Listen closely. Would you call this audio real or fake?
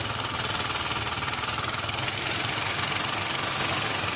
real